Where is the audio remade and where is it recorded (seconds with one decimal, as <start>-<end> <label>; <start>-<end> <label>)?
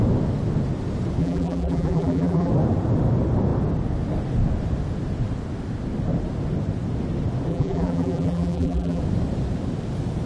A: 0.0-1.2 recorded; 1.2-2.5 remade; 2.5-7.5 recorded; 7.5-9.0 remade; 9.0-10.3 recorded